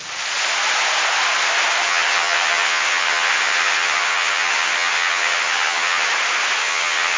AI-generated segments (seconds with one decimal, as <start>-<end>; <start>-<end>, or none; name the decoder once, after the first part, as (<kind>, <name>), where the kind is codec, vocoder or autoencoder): 1.8-6.1 (vocoder, HiFi-GAN); 6.6-7.2